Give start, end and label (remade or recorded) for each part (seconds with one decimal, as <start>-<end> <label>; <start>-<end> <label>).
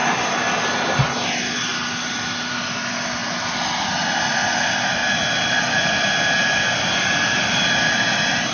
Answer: 0.0-8.5 recorded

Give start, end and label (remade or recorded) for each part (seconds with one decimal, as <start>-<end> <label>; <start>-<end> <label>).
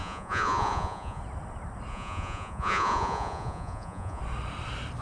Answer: 0.0-1.2 remade; 1.2-1.9 recorded; 1.9-4.2 remade; 4.2-5.0 recorded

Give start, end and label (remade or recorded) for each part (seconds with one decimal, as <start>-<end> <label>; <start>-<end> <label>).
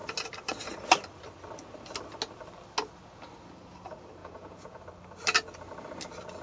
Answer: 0.0-4.2 recorded; 4.2-4.8 remade; 4.8-6.4 recorded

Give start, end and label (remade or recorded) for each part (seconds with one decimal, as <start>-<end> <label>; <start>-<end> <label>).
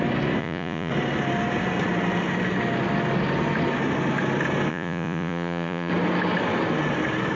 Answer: 0.0-0.4 recorded; 0.4-0.9 remade; 0.9-4.7 recorded; 4.7-5.9 remade; 5.9-7.4 recorded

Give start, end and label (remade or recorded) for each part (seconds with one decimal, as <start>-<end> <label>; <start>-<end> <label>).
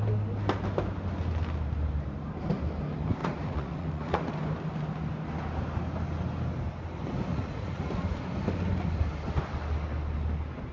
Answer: 0.0-3.2 recorded; 3.2-4.3 remade; 4.3-7.3 recorded; 7.3-7.9 remade; 7.9-10.7 recorded